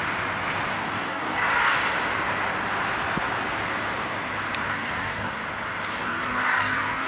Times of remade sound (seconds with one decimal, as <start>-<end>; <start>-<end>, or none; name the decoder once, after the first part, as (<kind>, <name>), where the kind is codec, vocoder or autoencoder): 0.7-1.8 (codec, DAC); 4.7-5.4; 5.9-7.1